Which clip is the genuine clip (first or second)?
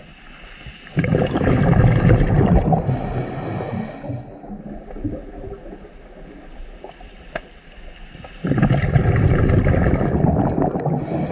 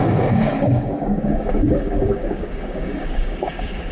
first